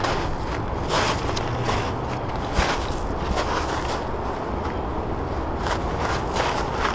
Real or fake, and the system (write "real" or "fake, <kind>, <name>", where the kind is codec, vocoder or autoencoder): real